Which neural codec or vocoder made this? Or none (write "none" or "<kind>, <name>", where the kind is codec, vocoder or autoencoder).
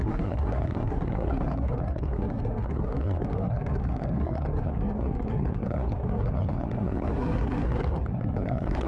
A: codec, SNAC